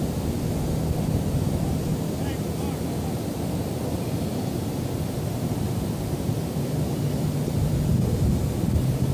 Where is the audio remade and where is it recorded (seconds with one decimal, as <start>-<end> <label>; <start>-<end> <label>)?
0.0-1.9 recorded; 1.9-2.5 remade; 2.5-4.3 recorded; 4.3-7.9 remade; 7.9-9.1 recorded